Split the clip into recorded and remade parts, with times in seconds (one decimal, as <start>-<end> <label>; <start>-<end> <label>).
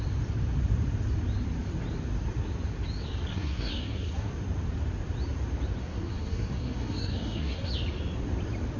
0.0-3.3 recorded; 3.3-4.3 remade; 4.3-5.8 recorded; 5.8-7.7 remade; 7.7-8.8 recorded